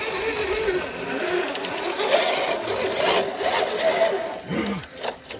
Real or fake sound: real